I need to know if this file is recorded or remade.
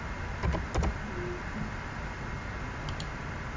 recorded